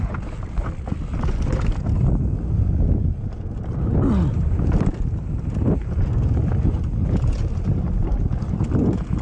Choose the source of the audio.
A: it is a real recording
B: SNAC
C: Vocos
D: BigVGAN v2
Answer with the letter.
A